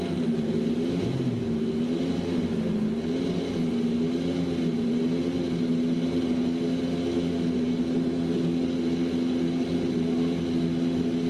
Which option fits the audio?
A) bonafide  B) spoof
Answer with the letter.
A